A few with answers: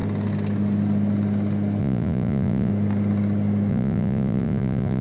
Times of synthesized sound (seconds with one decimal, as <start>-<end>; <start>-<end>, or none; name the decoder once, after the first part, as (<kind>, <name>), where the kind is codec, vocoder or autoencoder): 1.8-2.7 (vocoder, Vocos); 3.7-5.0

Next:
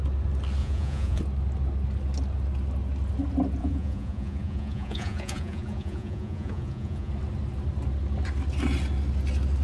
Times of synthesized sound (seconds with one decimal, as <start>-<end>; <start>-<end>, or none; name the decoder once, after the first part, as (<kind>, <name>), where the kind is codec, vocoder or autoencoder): 0.6-1.2 (vocoder, Vocos); 3.6-7.1

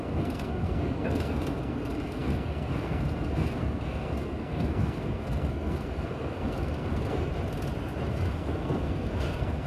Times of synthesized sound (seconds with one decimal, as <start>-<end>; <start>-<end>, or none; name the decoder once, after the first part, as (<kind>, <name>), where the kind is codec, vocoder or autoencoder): 0.0-7.3 (codec, SNAC); 8.1-9.7